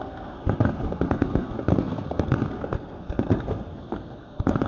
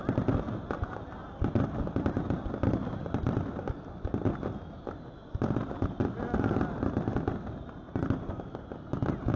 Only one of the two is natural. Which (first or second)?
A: second